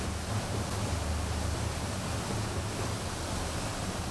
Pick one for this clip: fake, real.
real